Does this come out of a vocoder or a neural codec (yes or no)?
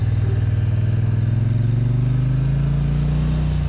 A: no